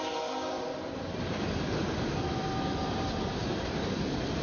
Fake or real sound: fake